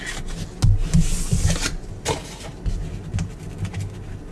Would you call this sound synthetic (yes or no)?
no